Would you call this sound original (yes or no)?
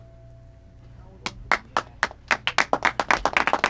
yes